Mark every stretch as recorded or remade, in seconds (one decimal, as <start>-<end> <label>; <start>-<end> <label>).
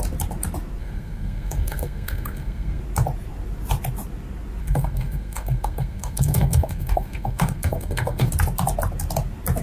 0.0-0.8 recorded; 0.8-2.8 remade; 2.8-4.6 recorded; 4.6-8.3 remade; 8.3-9.6 recorded